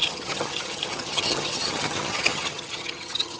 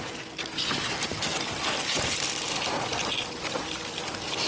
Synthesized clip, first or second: first